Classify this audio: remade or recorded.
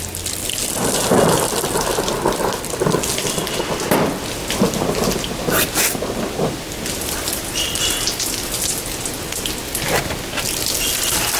recorded